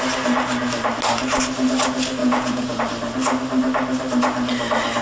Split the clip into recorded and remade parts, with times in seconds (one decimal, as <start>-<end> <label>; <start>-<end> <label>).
0.0-2.2 recorded; 2.2-2.8 remade; 2.8-5.0 recorded